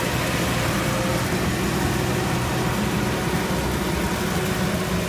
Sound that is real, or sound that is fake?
real